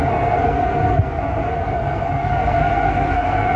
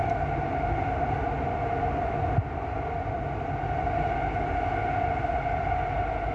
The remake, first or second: first